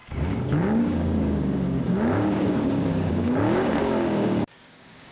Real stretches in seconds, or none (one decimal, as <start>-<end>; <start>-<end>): none